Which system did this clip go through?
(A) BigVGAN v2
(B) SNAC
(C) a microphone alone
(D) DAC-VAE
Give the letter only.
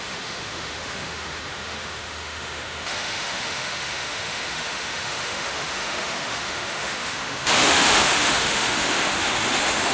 D